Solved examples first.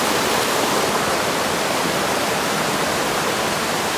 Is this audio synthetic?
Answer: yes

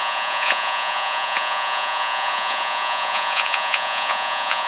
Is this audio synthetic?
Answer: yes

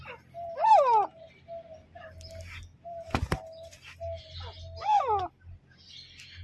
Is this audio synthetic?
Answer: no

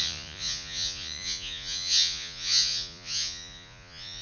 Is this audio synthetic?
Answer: yes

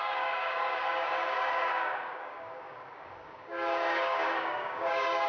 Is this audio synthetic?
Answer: yes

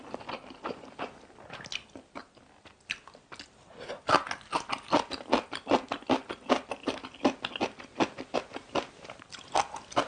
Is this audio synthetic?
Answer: no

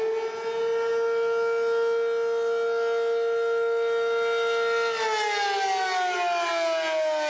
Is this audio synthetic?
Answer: no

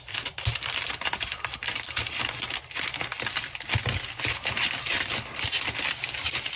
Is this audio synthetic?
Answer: no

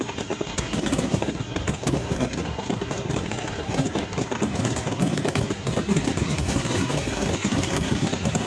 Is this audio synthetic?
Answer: yes